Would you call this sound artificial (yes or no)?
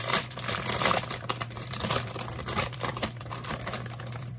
yes